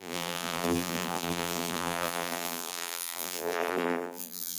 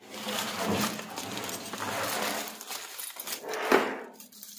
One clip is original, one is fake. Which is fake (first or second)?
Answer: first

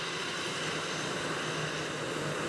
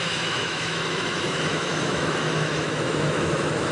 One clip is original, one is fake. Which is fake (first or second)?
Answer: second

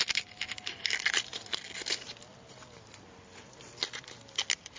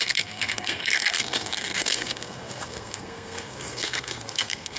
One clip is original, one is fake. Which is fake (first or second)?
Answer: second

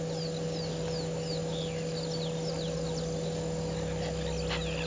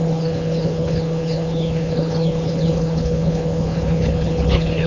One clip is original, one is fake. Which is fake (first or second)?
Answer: second